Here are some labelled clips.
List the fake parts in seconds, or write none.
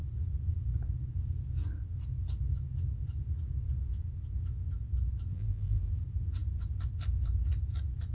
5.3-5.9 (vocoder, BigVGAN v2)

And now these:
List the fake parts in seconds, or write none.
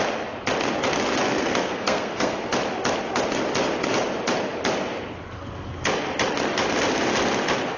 1.4-2.4 (codec, SNAC)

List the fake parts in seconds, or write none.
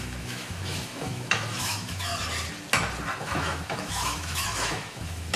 0.0-2.1 (autoencoder, DAC-VAE); 3.2-5.4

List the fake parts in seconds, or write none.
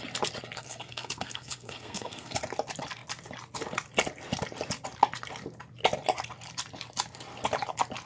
0.6-2.4 (codec, SNAC)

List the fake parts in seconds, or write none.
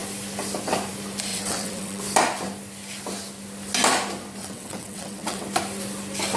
1.3-2.0 (vocoder, WaveNeXt); 4.4-5.4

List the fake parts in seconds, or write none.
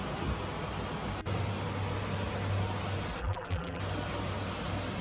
3.2-3.8 (vocoder, BigVGAN v2)